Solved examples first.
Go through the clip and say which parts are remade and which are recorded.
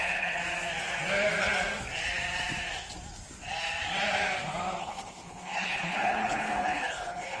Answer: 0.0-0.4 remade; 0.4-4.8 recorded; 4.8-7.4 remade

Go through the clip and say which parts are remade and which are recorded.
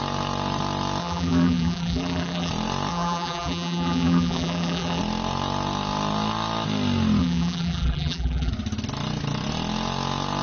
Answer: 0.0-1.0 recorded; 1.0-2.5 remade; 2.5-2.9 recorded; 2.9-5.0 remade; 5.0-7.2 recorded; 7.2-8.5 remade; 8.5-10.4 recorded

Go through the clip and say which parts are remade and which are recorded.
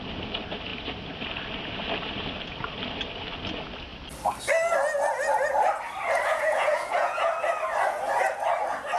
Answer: 0.0-6.3 recorded; 6.3-7.3 remade; 7.3-9.0 recorded